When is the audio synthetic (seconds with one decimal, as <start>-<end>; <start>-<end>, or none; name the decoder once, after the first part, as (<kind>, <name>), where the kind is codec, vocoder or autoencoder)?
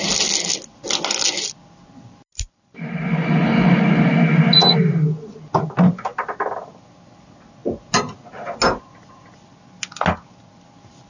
none